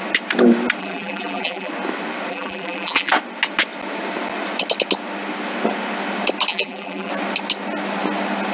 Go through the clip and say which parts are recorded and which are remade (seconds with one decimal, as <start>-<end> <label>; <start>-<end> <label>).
0.0-0.8 recorded; 0.8-1.7 remade; 1.7-2.3 recorded; 2.3-3.1 remade; 3.1-6.5 recorded; 6.5-7.1 remade; 7.1-8.5 recorded